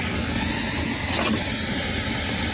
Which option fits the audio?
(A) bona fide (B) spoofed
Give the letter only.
A